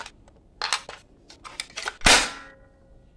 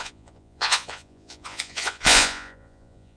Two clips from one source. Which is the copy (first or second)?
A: second